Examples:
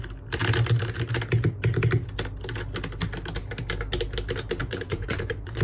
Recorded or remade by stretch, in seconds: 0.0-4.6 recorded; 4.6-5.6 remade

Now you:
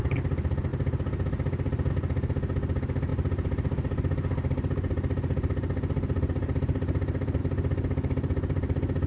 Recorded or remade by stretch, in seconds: 0.0-9.1 recorded

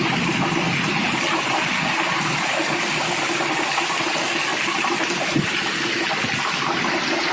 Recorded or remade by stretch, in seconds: 0.0-7.3 recorded

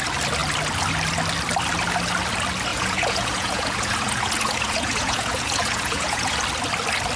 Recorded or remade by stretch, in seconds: 0.0-2.7 recorded; 2.7-6.4 remade; 6.4-7.2 recorded

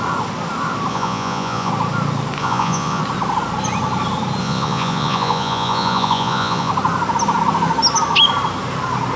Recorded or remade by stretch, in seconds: 0.0-0.9 recorded; 0.9-1.7 remade; 1.7-2.4 recorded; 2.4-3.0 remade; 3.0-4.4 recorded; 4.4-6.7 remade; 6.7-9.2 recorded